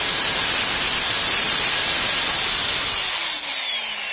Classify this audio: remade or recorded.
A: recorded